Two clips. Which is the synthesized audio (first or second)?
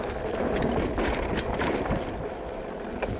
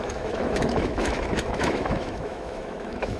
second